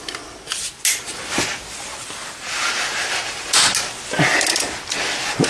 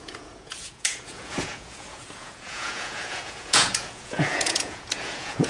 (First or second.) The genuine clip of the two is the first